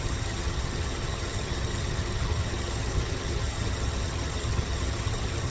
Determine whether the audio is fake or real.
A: fake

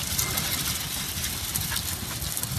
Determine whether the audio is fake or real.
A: real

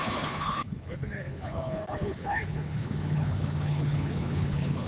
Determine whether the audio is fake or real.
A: fake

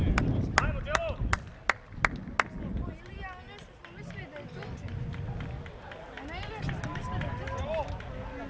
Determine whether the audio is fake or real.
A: real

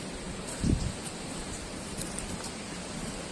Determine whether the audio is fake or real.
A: real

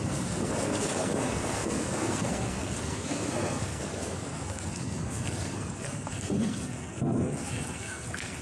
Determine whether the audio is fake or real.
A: fake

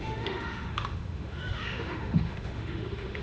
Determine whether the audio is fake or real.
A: fake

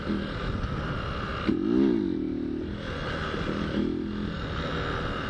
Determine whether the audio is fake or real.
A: real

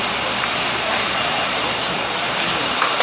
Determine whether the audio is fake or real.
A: real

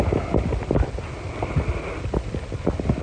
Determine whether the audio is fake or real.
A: real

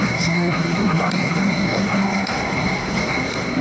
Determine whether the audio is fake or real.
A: fake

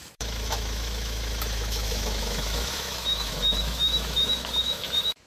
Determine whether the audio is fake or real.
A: fake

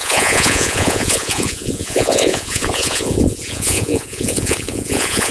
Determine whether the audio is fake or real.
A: fake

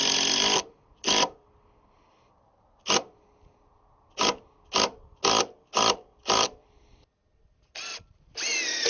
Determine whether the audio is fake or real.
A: real